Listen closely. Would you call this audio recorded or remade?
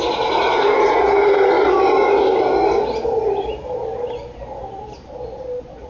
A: recorded